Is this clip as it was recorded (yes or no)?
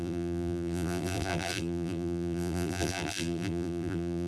no